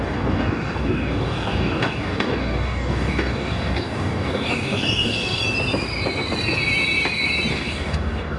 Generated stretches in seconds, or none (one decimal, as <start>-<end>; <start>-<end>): 0.0-5.4; 7.5-8.4